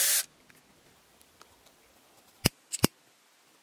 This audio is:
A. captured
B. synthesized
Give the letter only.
A